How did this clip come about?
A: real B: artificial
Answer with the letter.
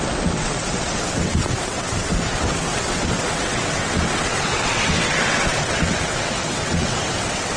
B